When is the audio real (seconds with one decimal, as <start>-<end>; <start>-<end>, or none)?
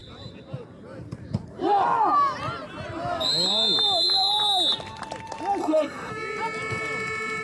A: 0.0-5.6; 6.1-7.4